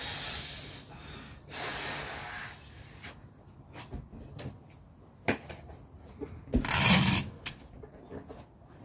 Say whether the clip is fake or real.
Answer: real